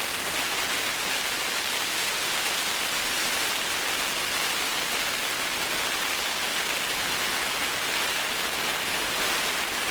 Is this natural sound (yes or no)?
yes